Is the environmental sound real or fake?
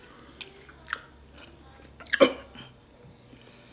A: real